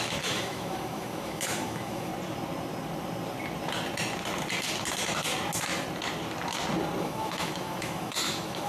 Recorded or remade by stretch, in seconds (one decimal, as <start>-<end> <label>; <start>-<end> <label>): 0.0-2.1 remade; 2.1-7.0 recorded; 7.0-8.7 remade